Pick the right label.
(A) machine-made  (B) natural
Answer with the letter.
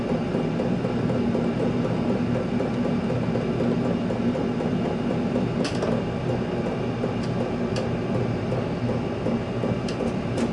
B